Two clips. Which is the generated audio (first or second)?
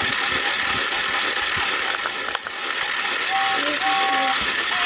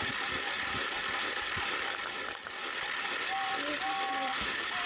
second